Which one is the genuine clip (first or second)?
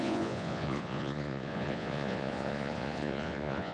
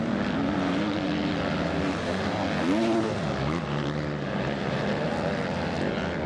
second